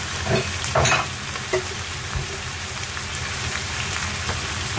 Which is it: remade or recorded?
recorded